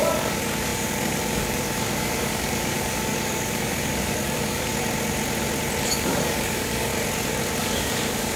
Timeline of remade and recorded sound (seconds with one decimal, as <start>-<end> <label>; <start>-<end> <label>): 0.0-4.7 remade; 4.7-5.8 recorded; 5.8-6.9 remade; 6.9-7.6 recorded; 7.6-8.4 remade